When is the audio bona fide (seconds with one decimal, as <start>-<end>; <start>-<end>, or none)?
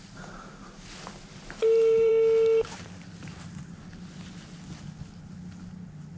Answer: 0.0-1.6; 2.1-3.2; 3.8-6.2